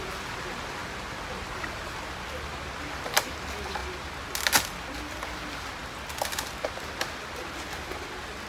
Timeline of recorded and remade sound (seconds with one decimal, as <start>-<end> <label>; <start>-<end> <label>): 0.0-8.5 recorded